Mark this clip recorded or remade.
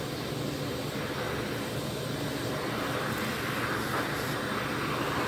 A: recorded